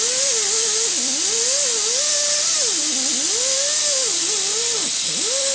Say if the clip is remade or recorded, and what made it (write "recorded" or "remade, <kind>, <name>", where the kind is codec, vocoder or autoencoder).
recorded